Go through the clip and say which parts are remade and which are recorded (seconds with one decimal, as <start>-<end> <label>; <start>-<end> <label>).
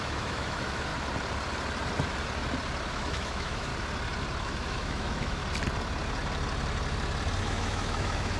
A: 0.0-0.9 remade; 0.9-2.9 recorded; 2.9-3.7 remade; 3.7-4.4 recorded; 4.4-5.4 remade; 5.4-7.4 recorded; 7.4-8.4 remade